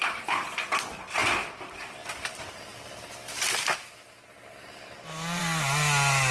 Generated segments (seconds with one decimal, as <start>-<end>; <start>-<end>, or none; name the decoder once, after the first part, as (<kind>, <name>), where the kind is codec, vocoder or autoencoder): 2.7-5.4 (vocoder, BigVGAN v2)